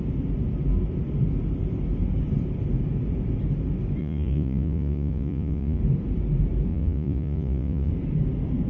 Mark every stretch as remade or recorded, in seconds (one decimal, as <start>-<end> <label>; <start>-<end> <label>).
0.0-4.0 recorded; 4.0-5.8 remade; 5.8-6.7 recorded; 6.7-7.9 remade; 7.9-8.7 recorded